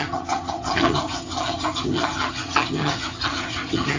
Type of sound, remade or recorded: remade